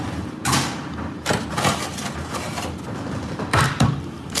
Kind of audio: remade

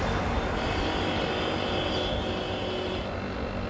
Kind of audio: recorded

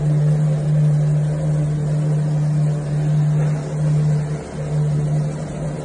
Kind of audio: recorded